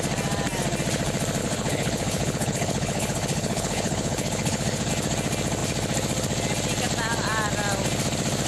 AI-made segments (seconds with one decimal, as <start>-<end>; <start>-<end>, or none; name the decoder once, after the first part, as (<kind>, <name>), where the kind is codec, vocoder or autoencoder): 1.4-4.9 (codec, HILCodec)